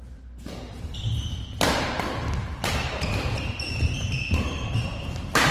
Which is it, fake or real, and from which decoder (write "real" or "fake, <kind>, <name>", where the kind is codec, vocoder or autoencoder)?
fake, vocoder, BigVGAN v2